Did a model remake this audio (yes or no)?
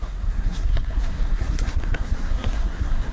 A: yes